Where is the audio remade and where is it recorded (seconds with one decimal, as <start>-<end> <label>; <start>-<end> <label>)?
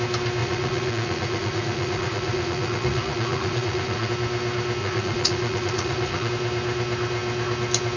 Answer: 0.0-0.4 recorded; 0.4-4.1 remade; 4.1-4.8 recorded; 4.8-6.3 remade; 6.3-8.0 recorded